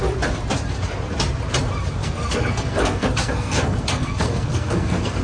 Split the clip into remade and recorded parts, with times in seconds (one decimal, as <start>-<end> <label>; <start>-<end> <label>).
0.0-2.0 recorded; 2.0-5.2 remade